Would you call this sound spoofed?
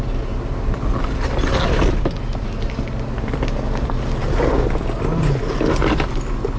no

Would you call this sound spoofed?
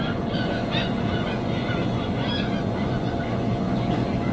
yes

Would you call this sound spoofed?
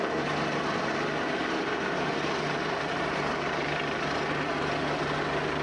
no